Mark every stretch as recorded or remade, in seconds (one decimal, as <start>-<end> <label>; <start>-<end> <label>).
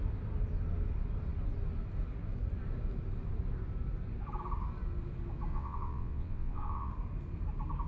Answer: 0.0-5.5 recorded; 5.5-6.9 remade; 6.9-7.9 recorded